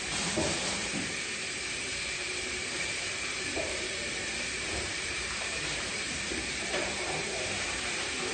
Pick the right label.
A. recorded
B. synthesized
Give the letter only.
B